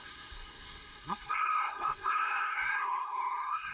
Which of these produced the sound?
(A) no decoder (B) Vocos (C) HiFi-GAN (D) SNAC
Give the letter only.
D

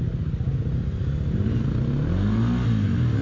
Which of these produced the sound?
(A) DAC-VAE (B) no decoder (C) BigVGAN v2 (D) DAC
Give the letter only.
B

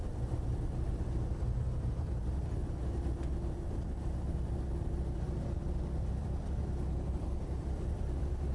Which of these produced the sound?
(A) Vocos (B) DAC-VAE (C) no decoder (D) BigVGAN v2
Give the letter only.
D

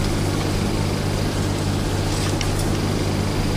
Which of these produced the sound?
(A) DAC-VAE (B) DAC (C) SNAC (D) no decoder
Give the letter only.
D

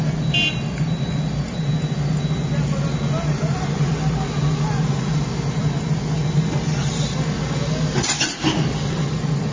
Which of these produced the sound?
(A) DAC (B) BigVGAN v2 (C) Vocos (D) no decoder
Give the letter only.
D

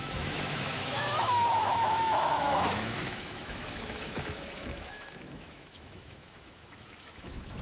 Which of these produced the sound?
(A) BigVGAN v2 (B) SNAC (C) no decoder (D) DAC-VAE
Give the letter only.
D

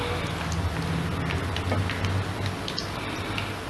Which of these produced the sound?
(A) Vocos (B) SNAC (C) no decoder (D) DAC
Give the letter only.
C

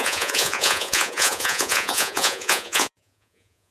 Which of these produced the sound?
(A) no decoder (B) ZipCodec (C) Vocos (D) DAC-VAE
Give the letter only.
C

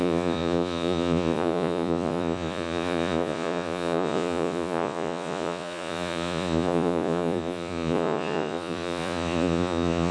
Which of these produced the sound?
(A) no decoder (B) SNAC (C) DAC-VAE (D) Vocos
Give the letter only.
D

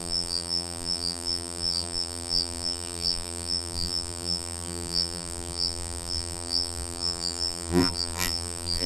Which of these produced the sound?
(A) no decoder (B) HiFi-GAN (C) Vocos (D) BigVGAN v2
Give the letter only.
D